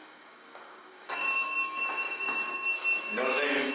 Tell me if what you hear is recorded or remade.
remade